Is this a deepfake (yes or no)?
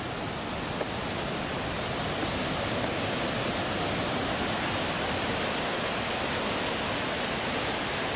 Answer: no